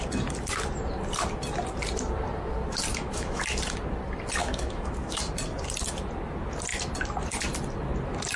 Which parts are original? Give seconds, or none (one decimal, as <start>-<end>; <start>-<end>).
0.0-2.9; 3.4-4.4; 5.2-8.4

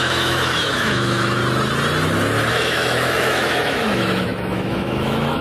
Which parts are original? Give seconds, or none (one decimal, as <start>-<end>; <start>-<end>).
1.4-2.5

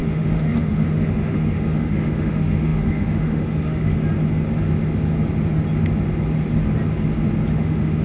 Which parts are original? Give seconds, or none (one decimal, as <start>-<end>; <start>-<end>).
4.0-7.5

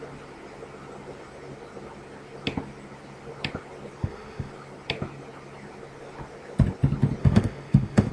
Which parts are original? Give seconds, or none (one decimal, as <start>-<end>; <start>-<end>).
0.0-4.0; 4.5-7.2

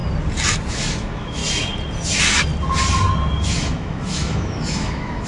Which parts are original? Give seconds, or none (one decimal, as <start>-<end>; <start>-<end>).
0.0-0.7; 1.4-3.4